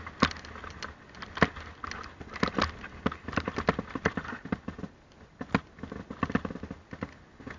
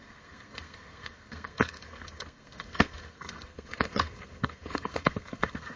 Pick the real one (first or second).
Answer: first